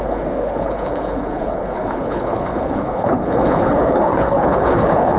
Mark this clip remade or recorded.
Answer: remade